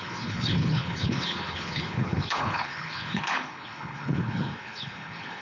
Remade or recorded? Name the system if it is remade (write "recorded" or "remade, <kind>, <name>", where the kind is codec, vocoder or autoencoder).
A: remade, codec, HILCodec